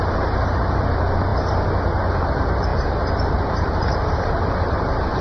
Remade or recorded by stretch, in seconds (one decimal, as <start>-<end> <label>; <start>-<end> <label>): 0.0-1.3 remade; 1.3-2.1 recorded; 2.1-2.7 remade; 2.7-3.5 recorded; 3.5-5.2 remade